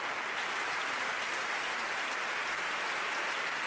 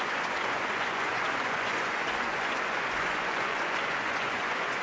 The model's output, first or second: second